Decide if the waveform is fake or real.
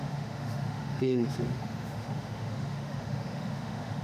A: fake